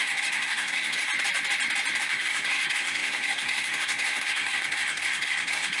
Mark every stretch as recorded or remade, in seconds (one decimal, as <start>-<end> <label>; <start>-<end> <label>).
0.0-1.1 remade; 1.1-2.0 recorded; 2.0-5.8 remade

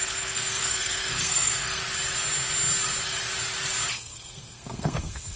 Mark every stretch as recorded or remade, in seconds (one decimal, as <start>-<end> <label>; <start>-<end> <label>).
0.0-1.8 remade; 1.8-3.9 recorded; 3.9-5.4 remade

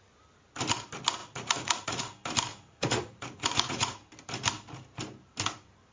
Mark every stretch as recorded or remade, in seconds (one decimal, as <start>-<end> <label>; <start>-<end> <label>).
0.0-1.2 recorded; 1.2-2.0 remade; 2.0-2.5 recorded; 2.5-4.1 remade; 4.1-5.9 recorded

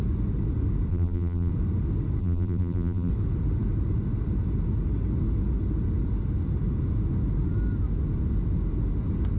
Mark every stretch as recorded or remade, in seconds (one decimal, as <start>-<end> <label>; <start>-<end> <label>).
0.0-0.9 recorded; 0.9-1.5 remade; 1.5-2.2 recorded; 2.2-3.1 remade; 3.1-9.4 recorded

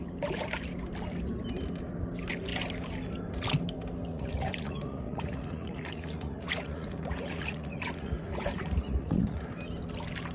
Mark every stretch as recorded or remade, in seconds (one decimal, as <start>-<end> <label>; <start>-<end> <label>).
0.0-4.1 recorded; 4.1-9.4 remade; 9.4-10.3 recorded

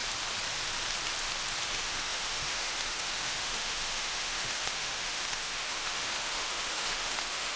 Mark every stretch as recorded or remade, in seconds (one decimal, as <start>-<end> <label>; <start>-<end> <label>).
0.0-1.7 recorded; 1.7-7.6 remade

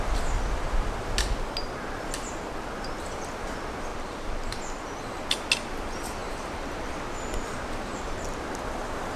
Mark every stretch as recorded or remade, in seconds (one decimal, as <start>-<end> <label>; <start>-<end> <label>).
0.0-3.9 recorded; 3.9-5.0 remade; 5.0-6.2 recorded; 6.2-6.9 remade; 6.9-7.9 recorded; 7.9-8.6 remade; 8.6-9.2 recorded